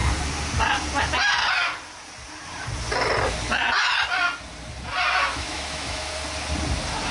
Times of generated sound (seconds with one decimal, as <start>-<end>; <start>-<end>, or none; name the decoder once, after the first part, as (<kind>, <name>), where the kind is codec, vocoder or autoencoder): 5.3-6.1 (autoencoder, DAC-VAE)